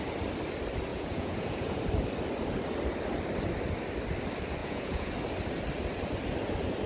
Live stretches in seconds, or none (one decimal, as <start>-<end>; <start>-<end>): 0.0-0.9; 1.8-4.6; 5.1-6.9